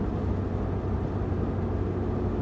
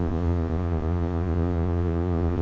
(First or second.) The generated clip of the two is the second